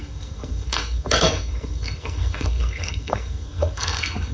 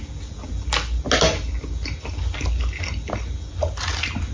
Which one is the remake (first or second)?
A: first